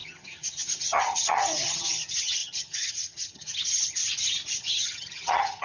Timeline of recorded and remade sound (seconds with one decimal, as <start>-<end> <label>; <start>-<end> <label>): 0.0-4.0 remade; 4.0-4.5 recorded; 4.5-5.6 remade